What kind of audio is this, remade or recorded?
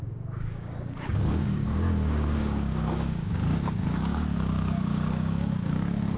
remade